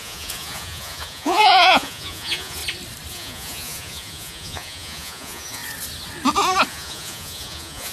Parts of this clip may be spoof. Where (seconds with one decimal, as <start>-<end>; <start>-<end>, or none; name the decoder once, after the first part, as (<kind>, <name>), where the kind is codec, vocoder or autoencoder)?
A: 0.0-2.6 (vocoder, Vocos); 3.1-5.6; 6.7-7.9